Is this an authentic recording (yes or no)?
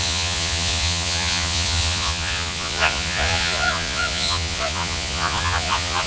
no